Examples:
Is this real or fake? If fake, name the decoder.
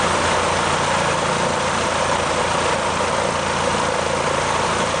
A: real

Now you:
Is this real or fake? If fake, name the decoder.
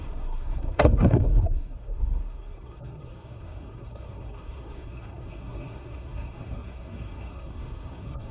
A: fake, codec, SNAC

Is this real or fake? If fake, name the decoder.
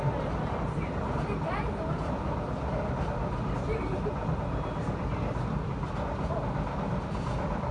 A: real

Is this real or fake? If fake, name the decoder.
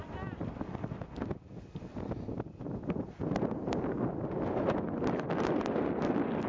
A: real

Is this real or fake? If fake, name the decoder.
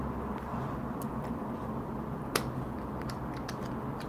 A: real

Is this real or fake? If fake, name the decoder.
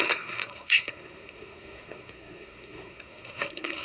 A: fake, codec, SNAC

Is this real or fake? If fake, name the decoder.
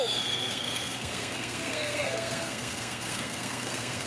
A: fake, codec, SNAC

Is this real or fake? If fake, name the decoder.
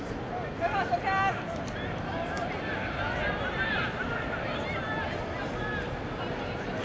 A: real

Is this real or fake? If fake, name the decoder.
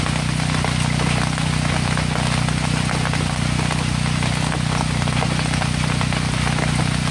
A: real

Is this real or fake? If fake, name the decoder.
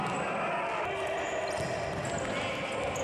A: real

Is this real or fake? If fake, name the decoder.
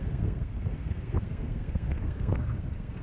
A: fake, codec, SNAC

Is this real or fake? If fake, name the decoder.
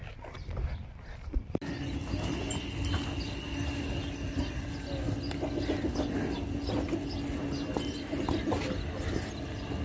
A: real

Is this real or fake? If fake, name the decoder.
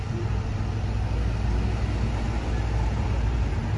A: real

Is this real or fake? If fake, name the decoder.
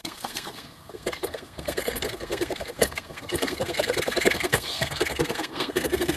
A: fake, codec, SNAC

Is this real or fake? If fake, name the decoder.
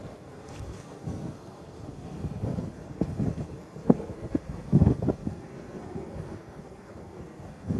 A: fake, codec, SNAC